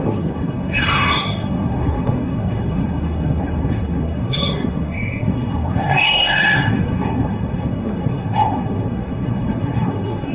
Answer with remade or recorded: remade